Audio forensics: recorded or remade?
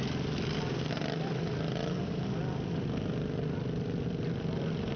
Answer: recorded